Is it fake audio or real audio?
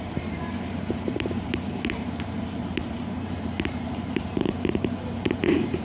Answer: fake